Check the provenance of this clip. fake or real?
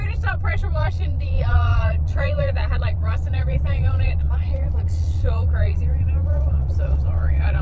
fake